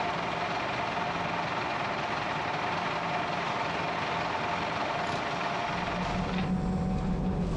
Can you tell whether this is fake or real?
real